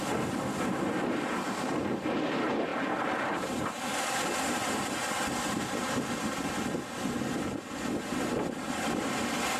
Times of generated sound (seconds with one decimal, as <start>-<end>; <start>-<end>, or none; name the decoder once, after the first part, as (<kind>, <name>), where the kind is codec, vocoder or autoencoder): 2.7-3.7 (vocoder, BigVGAN v2); 4.6-5.1